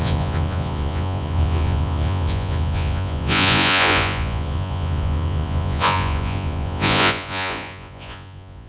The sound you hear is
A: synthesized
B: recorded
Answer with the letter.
A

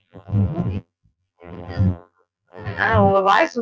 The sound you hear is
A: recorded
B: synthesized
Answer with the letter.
B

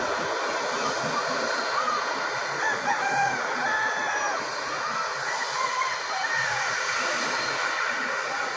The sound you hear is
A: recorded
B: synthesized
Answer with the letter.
B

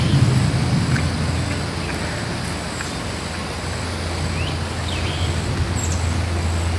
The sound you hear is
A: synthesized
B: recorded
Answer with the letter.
B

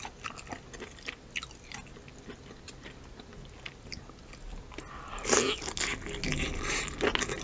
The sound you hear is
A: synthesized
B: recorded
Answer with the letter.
B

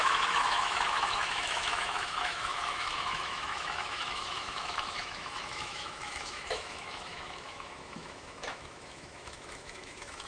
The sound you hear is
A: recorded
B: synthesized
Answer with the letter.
B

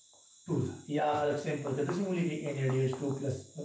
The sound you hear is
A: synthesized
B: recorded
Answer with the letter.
A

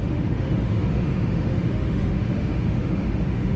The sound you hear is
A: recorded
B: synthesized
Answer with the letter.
B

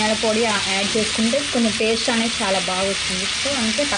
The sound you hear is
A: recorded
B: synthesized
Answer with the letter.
A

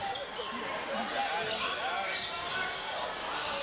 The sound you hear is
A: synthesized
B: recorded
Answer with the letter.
B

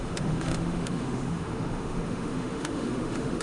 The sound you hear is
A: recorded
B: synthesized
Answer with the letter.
B